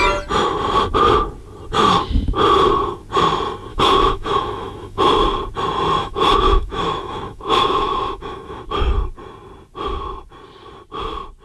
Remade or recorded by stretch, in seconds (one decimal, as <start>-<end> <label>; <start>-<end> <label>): 0.0-3.7 recorded; 3.7-5.0 remade; 5.0-6.0 recorded; 6.0-8.6 remade; 8.6-11.4 recorded